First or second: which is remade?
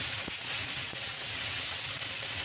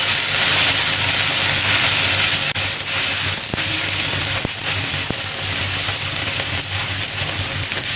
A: first